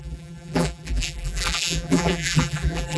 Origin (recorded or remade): remade